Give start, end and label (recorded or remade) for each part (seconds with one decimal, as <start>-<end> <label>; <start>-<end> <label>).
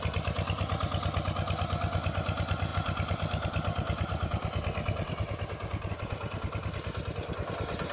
0.0-7.9 recorded